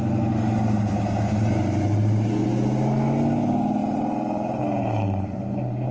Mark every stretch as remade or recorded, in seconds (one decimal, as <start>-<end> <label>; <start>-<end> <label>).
0.0-3.8 recorded; 3.8-4.6 remade; 4.6-5.9 recorded